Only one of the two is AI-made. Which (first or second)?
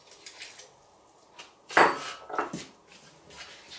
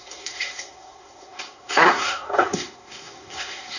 second